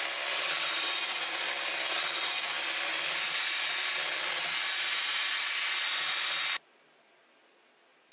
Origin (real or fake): real